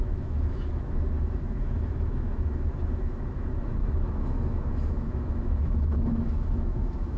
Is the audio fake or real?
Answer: fake